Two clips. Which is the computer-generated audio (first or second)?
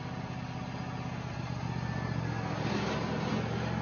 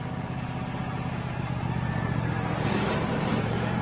second